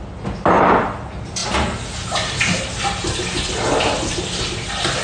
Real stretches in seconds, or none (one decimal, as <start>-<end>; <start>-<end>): 0.0-5.0